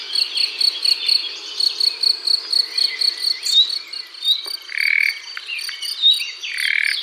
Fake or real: real